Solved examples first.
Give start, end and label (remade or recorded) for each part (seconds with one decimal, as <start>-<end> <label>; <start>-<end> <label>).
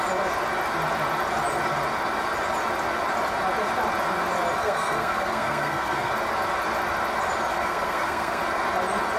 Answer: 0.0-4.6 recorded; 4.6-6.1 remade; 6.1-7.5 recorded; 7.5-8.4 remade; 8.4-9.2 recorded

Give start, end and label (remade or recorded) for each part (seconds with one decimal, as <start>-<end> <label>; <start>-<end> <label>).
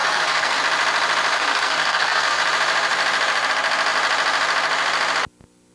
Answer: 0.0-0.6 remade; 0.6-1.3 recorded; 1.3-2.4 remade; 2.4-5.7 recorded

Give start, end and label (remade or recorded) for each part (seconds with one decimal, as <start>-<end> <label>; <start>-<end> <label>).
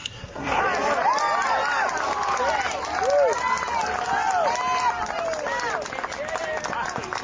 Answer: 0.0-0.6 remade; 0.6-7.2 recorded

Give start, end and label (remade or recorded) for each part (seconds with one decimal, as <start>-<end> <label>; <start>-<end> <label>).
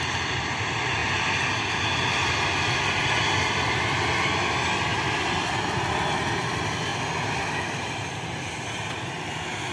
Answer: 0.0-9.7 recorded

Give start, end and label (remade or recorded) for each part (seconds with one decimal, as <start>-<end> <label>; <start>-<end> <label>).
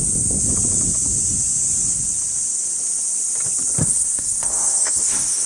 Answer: 0.0-3.8 recorded; 3.8-5.5 remade